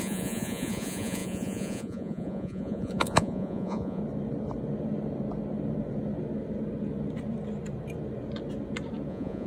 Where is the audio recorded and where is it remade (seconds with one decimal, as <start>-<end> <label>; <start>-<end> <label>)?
0.0-4.0 remade; 4.0-9.1 recorded; 9.1-9.5 remade